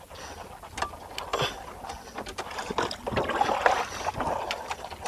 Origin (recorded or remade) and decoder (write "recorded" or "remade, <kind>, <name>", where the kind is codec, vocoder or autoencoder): recorded